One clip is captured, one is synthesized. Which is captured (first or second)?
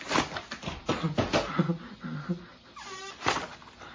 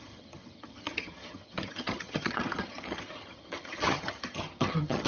first